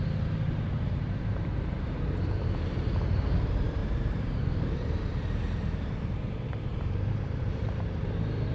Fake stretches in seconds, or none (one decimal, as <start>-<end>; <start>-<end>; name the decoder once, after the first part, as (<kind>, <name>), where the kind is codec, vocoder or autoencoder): 0.0-8.5 (vocoder, BigVGAN v2)